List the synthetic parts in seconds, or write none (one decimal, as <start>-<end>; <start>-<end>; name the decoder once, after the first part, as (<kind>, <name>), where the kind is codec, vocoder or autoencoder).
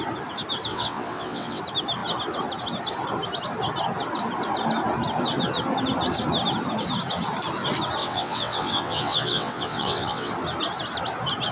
0.7-1.6 (vocoder, WaveNeXt); 8.0-10.3